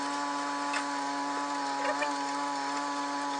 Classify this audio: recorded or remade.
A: recorded